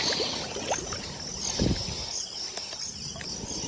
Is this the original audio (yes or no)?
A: yes